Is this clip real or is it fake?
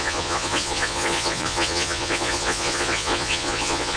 fake